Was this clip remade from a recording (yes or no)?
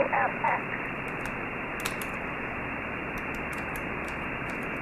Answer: no